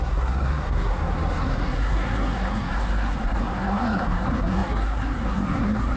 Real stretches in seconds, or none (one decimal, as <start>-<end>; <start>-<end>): none